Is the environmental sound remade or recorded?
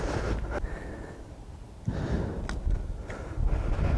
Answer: recorded